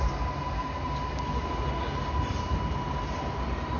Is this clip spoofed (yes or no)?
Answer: no